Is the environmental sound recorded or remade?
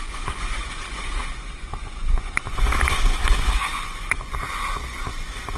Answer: remade